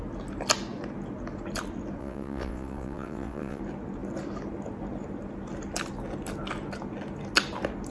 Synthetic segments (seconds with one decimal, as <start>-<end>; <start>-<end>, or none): 2.0-3.6